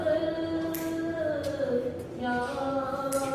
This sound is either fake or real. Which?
real